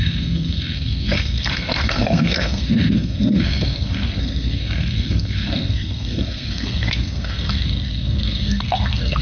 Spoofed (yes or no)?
yes